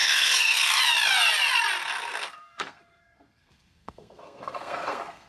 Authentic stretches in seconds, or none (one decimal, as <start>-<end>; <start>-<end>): 0.8-1.8